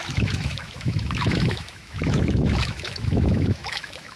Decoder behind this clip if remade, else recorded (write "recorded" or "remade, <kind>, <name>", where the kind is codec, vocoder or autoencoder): remade, autoencoder, DAC-VAE